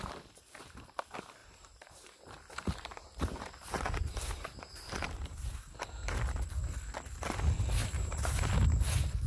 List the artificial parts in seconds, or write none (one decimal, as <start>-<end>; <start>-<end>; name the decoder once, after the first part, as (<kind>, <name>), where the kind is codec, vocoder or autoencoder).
1.4-6.2 (vocoder, BigVGAN v2); 7.8-8.5